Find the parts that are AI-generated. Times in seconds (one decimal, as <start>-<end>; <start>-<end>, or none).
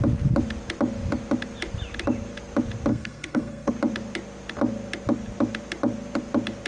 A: 2.9-3.7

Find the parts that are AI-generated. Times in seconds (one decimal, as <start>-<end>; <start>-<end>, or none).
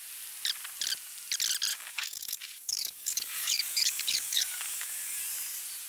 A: 1.7-5.2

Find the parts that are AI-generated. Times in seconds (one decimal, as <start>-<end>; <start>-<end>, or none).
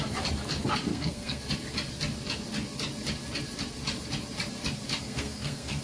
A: 0.9-1.4; 5.0-5.8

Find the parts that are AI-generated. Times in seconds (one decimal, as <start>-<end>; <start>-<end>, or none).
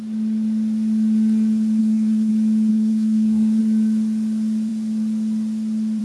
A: 1.8-2.3; 2.7-3.6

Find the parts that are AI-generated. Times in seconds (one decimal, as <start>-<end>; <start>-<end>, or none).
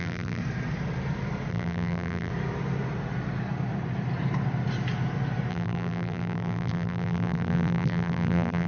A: 0.0-0.4; 1.5-2.3; 5.5-8.7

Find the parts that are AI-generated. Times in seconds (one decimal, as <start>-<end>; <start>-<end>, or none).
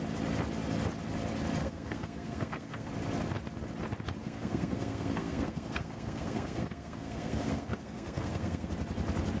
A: 1.6-2.9; 4.2-8.7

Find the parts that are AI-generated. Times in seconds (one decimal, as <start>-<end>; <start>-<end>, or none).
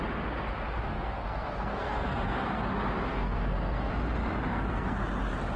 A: 0.9-2.6; 3.1-3.9; 4.5-5.0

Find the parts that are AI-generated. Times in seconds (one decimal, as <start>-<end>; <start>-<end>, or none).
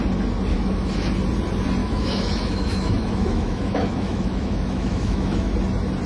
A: 0.5-1.1; 1.8-5.5